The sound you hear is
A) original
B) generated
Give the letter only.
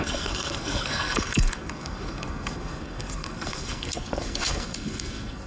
B